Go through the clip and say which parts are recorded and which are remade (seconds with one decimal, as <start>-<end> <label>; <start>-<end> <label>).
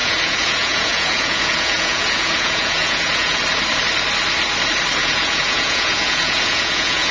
0.0-3.4 remade; 3.4-5.0 recorded; 5.0-7.1 remade